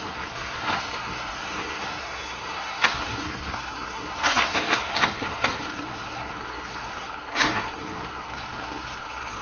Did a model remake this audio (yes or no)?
yes